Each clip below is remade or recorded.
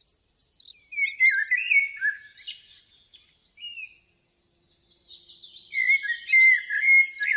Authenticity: recorded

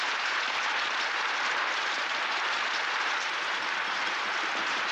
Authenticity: remade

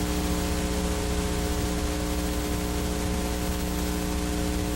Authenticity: recorded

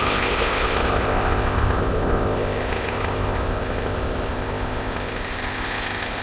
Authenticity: remade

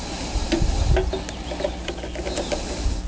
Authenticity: recorded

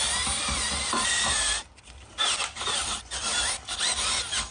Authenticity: recorded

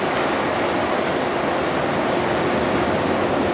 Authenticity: recorded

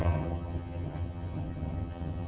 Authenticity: remade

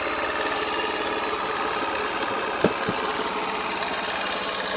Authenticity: recorded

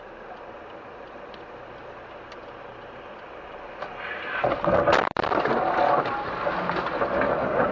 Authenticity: recorded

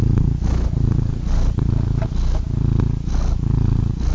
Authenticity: recorded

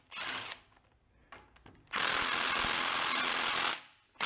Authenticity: recorded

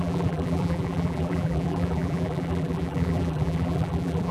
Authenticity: remade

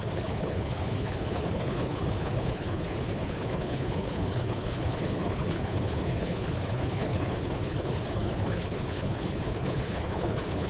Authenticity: remade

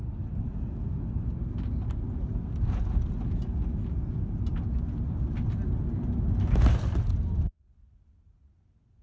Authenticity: recorded